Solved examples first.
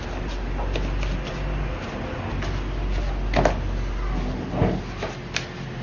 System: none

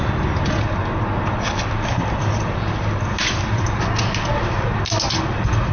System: none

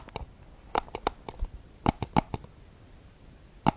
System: none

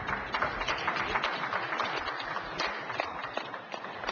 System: none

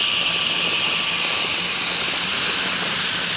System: none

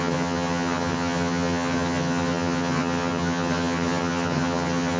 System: vocoder, HiFi-GAN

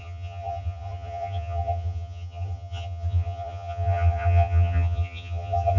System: vocoder, HiFi-GAN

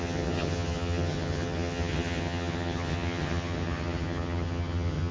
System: vocoder, HiFi-GAN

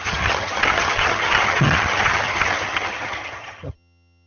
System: vocoder, HiFi-GAN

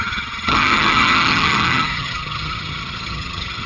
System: vocoder, HiFi-GAN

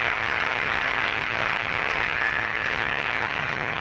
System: vocoder, HiFi-GAN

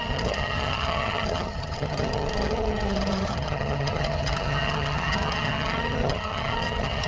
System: vocoder, HiFi-GAN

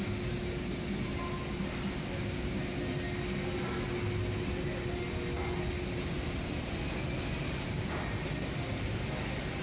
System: none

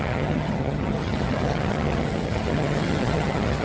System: vocoder, HiFi-GAN